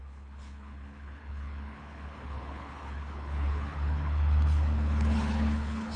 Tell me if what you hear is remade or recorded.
remade